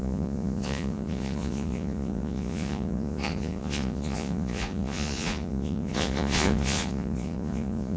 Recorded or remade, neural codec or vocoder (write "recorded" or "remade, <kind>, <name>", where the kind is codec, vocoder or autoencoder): remade, vocoder, Vocos